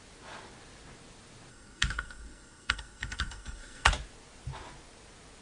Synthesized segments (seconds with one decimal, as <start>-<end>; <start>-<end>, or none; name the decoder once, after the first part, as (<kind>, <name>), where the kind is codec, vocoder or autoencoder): 1.5-3.9 (codec, SNAC)